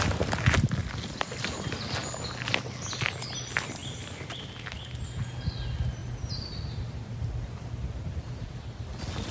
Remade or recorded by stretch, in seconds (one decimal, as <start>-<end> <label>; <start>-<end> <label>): 0.0-0.8 recorded; 0.8-1.5 remade; 1.5-3.8 recorded; 3.8-4.6 remade; 4.6-6.0 recorded; 6.0-8.4 remade; 8.4-9.3 recorded